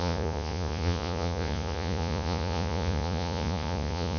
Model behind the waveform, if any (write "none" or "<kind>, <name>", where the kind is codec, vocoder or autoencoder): vocoder, Vocos